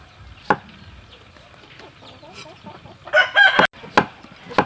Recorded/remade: recorded